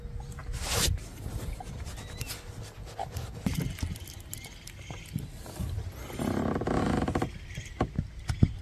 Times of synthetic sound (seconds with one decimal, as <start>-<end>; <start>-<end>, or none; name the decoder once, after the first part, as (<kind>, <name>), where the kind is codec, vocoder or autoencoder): none